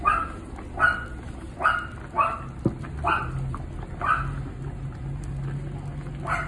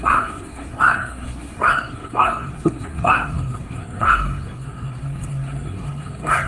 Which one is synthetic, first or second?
second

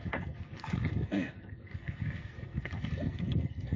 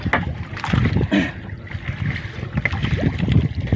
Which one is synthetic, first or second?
first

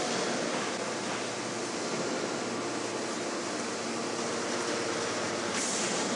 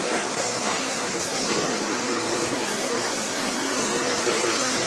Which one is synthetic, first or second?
second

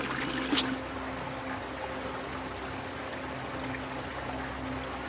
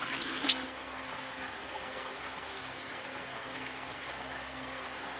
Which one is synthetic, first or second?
second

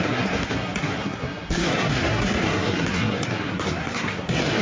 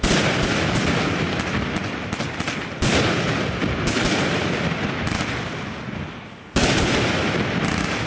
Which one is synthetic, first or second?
first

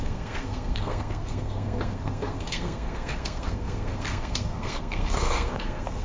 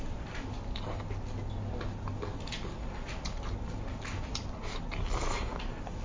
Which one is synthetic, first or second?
first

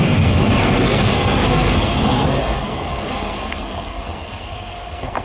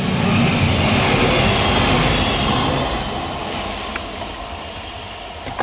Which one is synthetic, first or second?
first